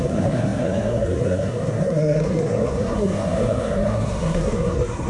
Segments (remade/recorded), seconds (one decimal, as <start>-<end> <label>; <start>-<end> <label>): 0.0-5.1 remade